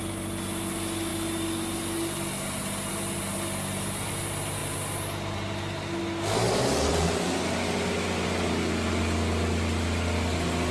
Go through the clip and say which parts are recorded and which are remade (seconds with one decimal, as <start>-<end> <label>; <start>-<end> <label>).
0.0-10.7 recorded